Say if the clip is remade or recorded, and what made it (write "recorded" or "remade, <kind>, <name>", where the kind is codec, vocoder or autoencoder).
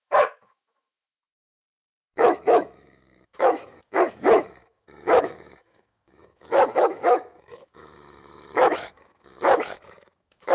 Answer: remade, autoencoder, DAC-VAE